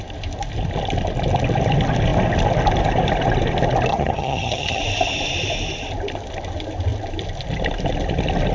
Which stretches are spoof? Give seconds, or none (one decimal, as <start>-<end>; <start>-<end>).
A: 3.9-4.8